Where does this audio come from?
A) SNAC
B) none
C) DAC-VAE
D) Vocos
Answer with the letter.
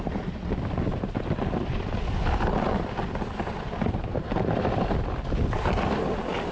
B